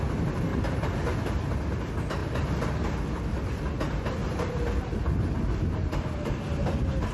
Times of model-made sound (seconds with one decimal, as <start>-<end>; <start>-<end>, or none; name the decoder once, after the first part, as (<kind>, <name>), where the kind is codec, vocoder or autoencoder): 0.5-1.3 (vocoder, BigVGAN v2); 4.2-6.3